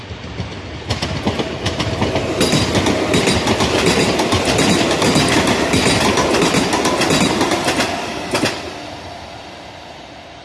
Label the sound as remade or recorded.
recorded